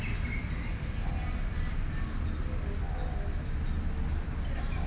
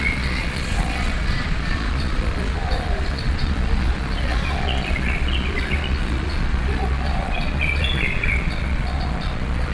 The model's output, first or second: second